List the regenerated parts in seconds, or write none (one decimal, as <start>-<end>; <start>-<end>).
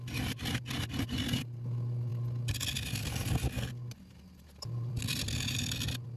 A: none